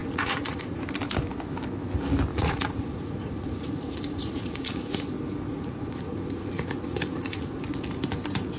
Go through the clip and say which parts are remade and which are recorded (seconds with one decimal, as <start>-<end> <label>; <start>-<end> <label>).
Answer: 0.0-0.8 remade; 0.8-2.3 recorded; 2.3-5.1 remade; 5.1-5.5 recorded; 5.5-7.6 remade; 7.6-8.6 recorded